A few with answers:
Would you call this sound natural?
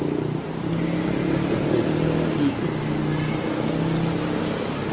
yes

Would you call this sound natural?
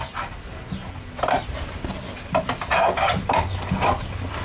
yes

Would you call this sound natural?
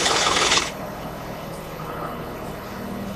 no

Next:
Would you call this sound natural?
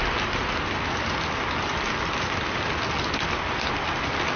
yes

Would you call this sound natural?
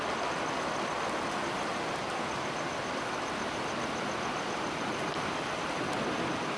yes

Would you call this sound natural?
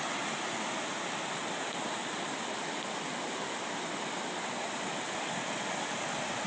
yes